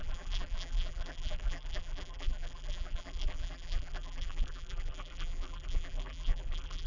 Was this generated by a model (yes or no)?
yes